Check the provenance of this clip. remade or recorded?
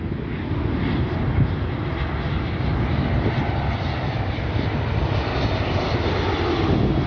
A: recorded